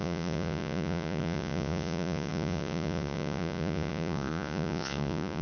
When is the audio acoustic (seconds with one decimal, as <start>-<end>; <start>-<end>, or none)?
none